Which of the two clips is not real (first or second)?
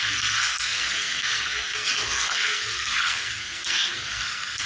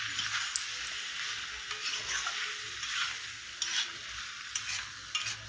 first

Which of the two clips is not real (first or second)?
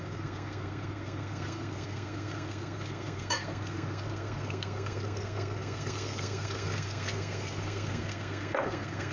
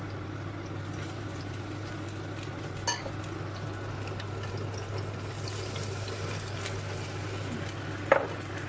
first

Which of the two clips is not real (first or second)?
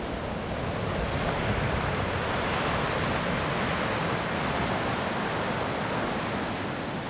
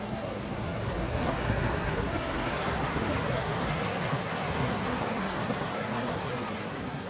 second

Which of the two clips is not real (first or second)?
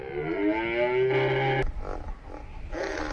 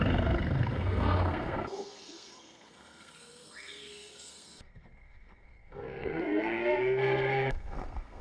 second